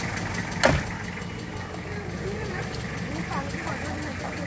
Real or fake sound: real